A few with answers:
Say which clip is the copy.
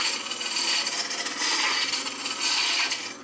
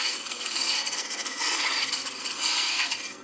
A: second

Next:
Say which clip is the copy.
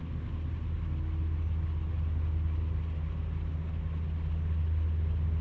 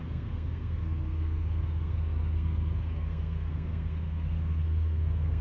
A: second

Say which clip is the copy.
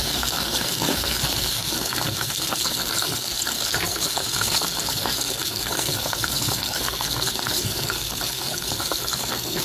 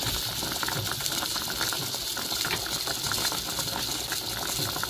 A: first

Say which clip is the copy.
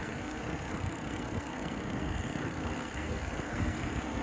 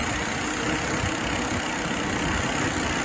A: first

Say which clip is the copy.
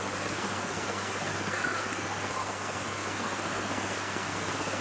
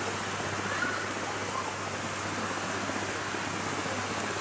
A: first